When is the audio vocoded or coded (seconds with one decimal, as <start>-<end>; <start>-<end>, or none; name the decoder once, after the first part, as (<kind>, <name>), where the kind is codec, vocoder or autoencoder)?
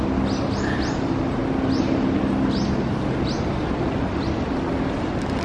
none